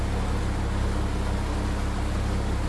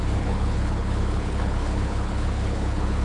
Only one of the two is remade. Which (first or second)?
second